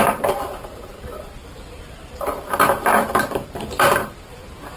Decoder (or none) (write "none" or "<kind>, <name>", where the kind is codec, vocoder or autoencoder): vocoder, BigVGAN v2